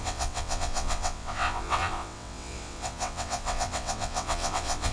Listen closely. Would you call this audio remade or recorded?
remade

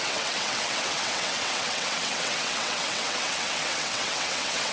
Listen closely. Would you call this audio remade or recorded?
remade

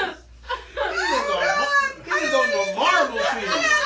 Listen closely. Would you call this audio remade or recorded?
recorded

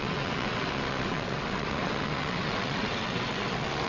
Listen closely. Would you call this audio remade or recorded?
remade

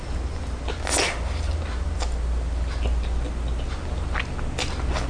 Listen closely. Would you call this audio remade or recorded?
recorded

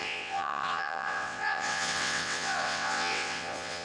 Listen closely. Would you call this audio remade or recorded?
remade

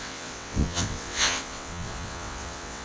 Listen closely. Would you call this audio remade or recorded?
remade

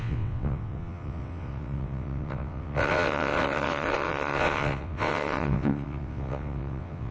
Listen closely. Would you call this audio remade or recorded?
remade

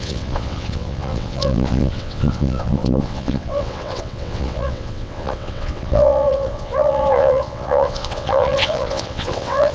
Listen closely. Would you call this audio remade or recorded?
remade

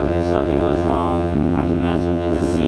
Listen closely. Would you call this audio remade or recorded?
remade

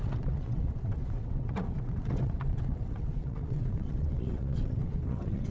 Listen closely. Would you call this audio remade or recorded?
remade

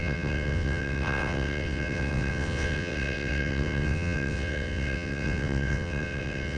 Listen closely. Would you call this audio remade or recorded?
remade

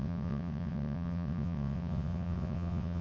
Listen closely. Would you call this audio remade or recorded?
remade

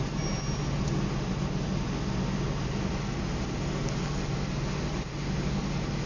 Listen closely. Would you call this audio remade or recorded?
recorded